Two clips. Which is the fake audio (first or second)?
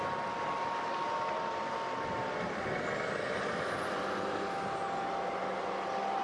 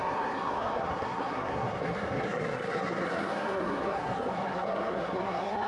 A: second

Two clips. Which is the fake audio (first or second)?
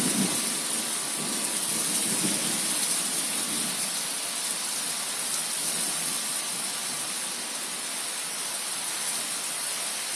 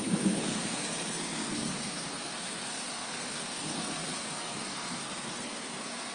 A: second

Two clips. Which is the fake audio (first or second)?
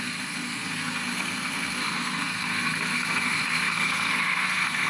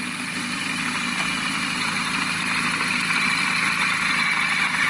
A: first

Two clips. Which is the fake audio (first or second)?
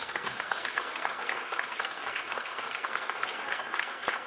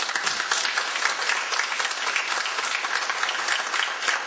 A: first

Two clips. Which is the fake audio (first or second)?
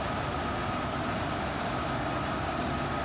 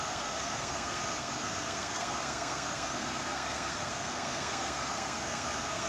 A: second